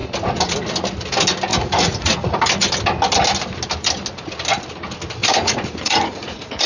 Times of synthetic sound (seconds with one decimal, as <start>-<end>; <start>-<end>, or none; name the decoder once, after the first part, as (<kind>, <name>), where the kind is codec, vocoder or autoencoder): 1.5-2.4 (vocoder, Vocos); 5.2-6.7